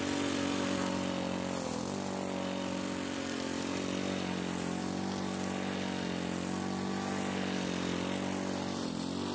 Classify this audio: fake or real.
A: real